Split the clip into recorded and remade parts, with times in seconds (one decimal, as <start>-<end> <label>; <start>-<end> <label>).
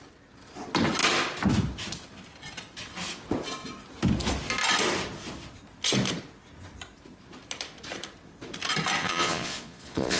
0.0-9.0 recorded; 9.0-10.2 remade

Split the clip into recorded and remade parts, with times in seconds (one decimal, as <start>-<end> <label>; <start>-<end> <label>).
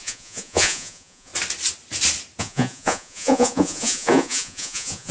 0.0-1.3 remade; 1.3-2.4 recorded; 2.4-5.1 remade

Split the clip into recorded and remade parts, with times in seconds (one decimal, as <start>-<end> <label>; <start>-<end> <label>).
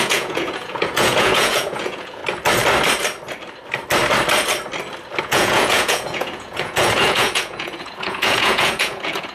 0.0-2.2 remade; 2.2-5.2 recorded; 5.2-9.3 remade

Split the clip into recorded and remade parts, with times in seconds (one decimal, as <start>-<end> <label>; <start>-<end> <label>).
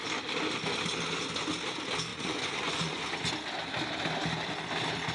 0.0-2.1 recorded; 2.1-3.0 remade; 3.0-5.1 recorded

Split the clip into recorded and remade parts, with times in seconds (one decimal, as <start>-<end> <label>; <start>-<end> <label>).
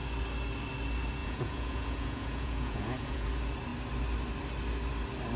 0.0-1.2 recorded; 1.2-3.3 remade; 3.3-5.4 recorded